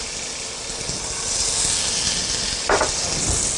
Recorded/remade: recorded